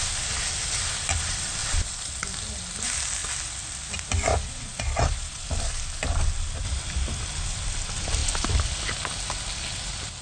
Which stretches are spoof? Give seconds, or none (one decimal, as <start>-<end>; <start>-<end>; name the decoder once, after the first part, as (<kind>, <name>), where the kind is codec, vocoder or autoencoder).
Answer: 4.3-5.4 (vocoder, Vocos)